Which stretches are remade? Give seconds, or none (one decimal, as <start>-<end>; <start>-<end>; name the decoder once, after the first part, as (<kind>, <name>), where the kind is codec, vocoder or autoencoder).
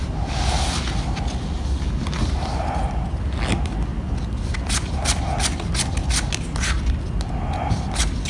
none